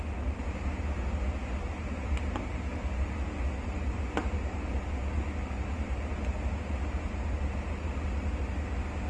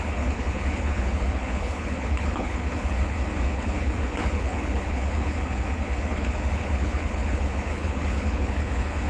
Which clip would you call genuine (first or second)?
first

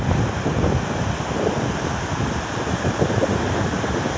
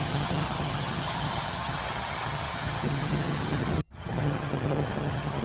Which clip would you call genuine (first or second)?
first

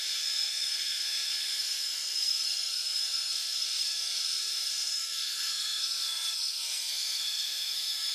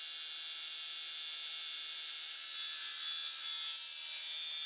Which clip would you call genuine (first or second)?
second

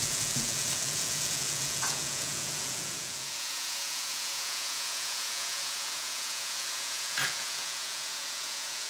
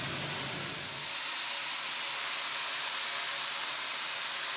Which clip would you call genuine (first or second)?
second